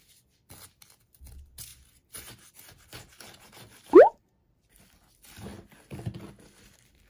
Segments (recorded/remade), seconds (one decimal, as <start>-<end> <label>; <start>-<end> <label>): 0.0-7.1 recorded